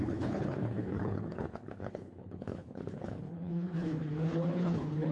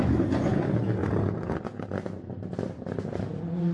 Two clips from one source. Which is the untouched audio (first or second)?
second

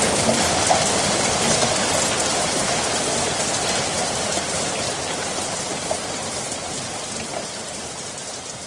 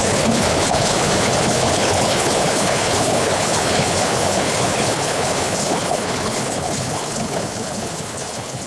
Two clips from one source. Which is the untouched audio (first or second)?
first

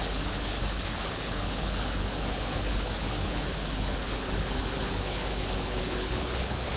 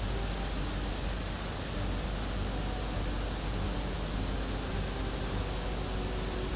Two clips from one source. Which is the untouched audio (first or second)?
second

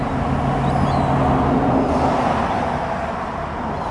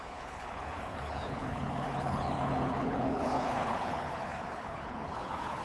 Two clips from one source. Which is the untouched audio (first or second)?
first